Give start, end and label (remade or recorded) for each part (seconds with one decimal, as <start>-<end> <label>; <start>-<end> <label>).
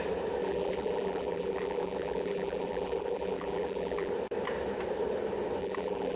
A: 0.0-0.4 recorded; 0.4-4.1 remade; 4.1-5.6 recorded; 5.6-6.2 remade